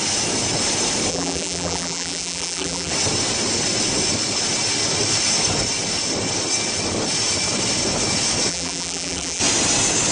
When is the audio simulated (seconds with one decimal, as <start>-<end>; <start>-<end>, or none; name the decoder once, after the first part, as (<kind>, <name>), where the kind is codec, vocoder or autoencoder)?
1.1-2.9 (vocoder, BigVGAN v2); 8.5-9.4